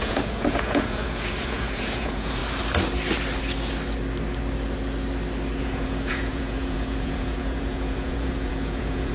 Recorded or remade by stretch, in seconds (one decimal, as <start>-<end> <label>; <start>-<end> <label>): 0.0-2.4 remade; 2.4-5.6 recorded; 5.6-9.1 remade